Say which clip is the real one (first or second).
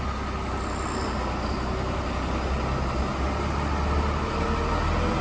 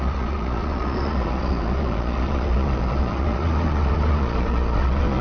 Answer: first